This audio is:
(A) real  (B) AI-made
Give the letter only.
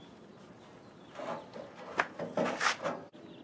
A